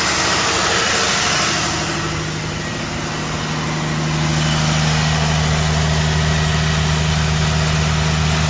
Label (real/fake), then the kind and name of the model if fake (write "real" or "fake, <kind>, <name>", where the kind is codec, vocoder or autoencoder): real